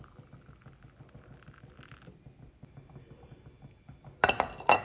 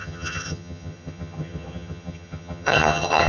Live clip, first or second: first